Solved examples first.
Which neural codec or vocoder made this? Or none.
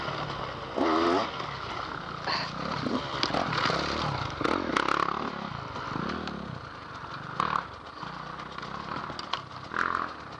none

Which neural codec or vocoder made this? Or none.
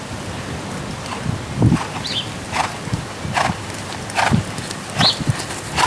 none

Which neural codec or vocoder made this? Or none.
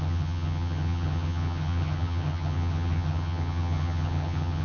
vocoder, HiFi-GAN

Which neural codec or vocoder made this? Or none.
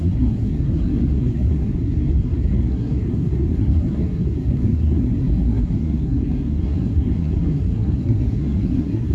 codec, SNAC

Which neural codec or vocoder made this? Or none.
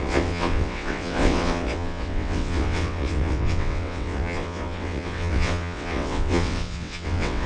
vocoder, WaveNeXt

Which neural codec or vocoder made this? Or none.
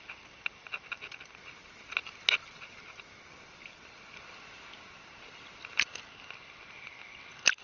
none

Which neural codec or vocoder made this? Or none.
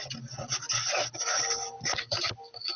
none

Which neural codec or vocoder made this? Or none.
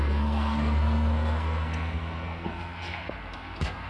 codec, SNAC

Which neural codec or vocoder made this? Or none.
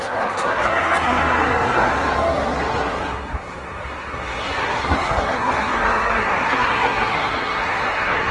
codec, SNAC